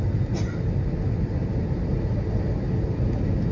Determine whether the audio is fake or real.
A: real